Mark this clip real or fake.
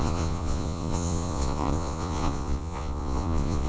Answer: fake